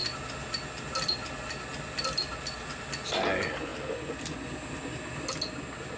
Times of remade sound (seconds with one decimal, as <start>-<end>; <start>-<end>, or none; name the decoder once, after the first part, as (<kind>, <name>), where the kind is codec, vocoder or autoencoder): none

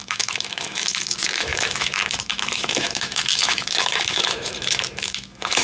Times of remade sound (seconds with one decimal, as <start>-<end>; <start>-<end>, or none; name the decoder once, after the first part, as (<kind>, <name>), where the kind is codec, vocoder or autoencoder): 0.0-5.6 (autoencoder, DAC-VAE)

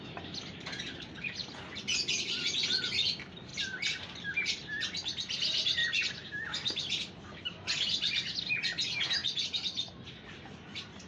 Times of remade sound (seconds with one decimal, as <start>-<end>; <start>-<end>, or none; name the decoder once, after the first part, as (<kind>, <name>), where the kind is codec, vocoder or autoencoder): 3.5-4.3 (vocoder, BigVGAN v2); 5.8-7.1; 9.2-9.9

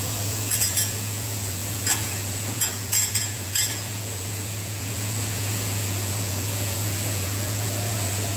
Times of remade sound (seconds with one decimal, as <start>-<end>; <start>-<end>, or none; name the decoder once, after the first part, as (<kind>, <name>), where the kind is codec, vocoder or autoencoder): 0.0-8.4 (vocoder, Vocos)

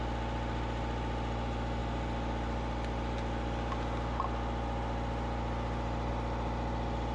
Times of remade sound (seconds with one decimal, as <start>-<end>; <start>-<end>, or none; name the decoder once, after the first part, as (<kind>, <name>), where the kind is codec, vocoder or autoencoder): none

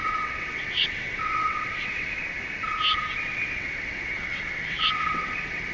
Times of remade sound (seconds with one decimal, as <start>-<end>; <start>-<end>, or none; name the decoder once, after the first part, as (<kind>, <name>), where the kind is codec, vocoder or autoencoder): 0.0-2.2 (vocoder, WaveNeXt); 3.2-5.7

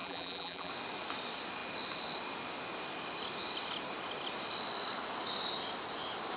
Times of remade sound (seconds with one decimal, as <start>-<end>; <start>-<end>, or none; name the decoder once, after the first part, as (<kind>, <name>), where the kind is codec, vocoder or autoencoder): 0.0-0.7 (vocoder, BigVGAN v2)